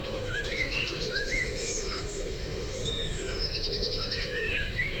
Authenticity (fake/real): fake